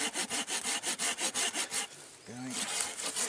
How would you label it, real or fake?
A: real